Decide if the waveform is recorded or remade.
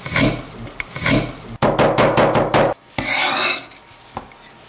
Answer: recorded